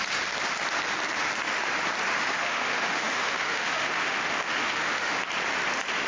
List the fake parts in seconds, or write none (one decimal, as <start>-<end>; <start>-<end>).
2.1-5.2

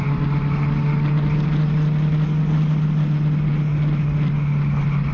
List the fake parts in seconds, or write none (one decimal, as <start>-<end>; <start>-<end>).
none

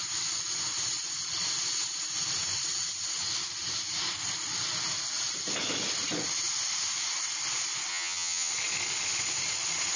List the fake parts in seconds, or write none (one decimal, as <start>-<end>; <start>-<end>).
7.9-8.5

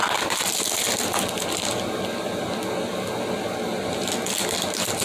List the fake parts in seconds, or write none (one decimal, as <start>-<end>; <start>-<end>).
none

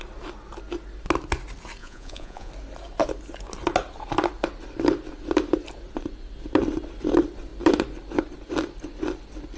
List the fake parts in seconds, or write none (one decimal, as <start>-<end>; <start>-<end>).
1.8-2.5